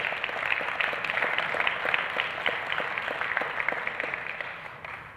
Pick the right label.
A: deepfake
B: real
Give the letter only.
B